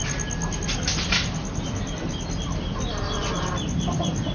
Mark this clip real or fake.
real